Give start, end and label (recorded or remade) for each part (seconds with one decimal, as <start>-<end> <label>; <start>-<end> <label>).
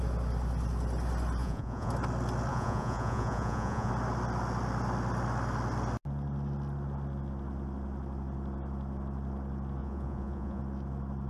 0.0-1.4 recorded; 1.4-1.9 remade; 1.9-2.5 recorded; 2.5-3.9 remade; 3.9-9.8 recorded; 9.8-10.6 remade; 10.6-11.3 recorded